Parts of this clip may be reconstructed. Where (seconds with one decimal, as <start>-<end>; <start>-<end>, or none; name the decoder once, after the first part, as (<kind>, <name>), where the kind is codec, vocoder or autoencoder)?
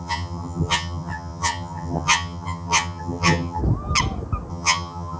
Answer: 0.0-3.6 (vocoder, HiFi-GAN); 4.5-5.2